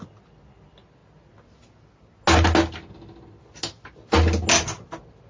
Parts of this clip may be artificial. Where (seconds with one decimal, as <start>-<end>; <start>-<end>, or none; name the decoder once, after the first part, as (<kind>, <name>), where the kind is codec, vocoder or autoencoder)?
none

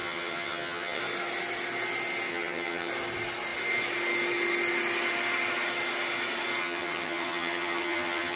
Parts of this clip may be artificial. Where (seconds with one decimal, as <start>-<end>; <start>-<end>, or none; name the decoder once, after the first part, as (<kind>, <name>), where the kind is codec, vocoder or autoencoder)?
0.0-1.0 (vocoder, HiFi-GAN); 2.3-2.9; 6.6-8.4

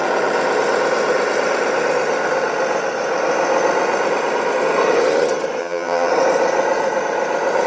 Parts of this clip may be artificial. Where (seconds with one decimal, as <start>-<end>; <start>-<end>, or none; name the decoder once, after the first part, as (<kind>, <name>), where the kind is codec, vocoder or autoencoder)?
5.6-6.1 (vocoder, HiFi-GAN)

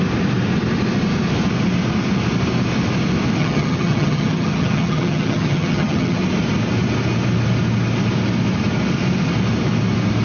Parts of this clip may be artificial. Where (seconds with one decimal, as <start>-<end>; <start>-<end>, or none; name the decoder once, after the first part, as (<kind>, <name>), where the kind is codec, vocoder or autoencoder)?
3.4-6.2 (vocoder, HiFi-GAN)

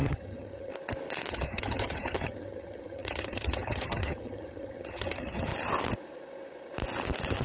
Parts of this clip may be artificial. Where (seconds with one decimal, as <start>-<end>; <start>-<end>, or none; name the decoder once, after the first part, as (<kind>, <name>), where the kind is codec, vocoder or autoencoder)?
0.0-0.7 (vocoder, HiFi-GAN); 1.3-5.5

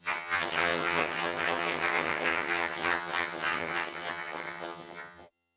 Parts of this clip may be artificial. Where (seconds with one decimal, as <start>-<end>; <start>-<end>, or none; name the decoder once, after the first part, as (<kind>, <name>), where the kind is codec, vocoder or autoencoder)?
0.0-5.6 (vocoder, HiFi-GAN)

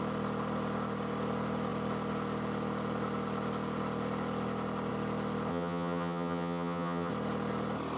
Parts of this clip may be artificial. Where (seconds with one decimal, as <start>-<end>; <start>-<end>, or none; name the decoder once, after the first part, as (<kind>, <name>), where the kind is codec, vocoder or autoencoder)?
5.5-7.1 (vocoder, HiFi-GAN)

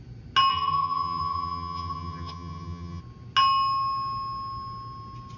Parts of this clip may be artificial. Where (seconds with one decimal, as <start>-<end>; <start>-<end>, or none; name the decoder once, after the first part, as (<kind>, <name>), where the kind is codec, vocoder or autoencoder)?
0.5-3.0 (vocoder, HiFi-GAN)